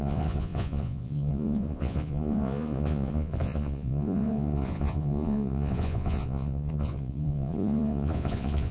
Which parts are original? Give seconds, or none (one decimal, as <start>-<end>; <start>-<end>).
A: none

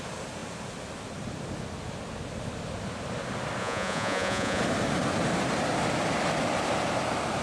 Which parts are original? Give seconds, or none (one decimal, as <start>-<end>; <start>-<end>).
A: 0.0-3.6; 4.6-7.4

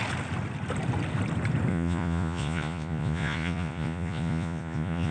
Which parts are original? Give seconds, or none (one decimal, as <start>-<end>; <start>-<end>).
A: 0.0-1.7

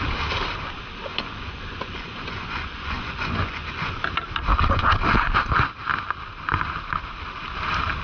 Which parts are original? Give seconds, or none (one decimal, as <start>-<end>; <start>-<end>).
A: 0.0-1.1; 4.0-4.5; 5.0-8.0

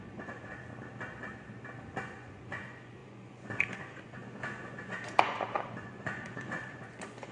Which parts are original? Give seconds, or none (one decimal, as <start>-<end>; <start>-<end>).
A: 0.5-2.0

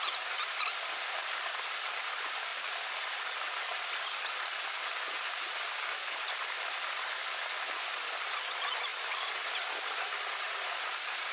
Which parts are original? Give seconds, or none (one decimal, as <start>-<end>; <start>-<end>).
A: 0.0-11.3